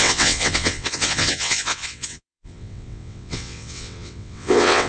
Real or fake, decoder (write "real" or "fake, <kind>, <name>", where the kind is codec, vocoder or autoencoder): fake, vocoder, WaveNeXt